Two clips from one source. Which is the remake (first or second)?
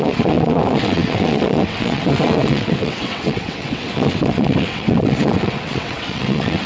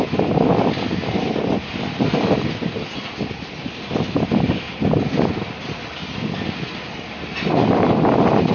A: first